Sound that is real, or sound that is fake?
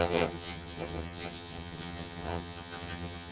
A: fake